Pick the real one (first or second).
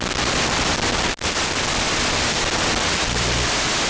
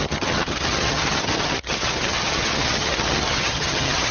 first